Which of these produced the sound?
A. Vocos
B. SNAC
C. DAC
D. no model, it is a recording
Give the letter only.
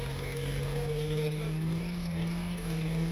C